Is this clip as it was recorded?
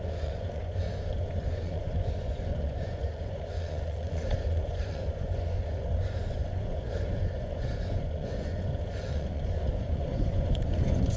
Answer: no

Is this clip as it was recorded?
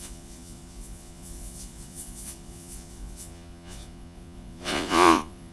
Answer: no